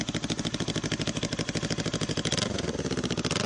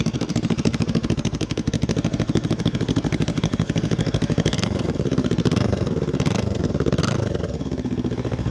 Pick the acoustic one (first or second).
first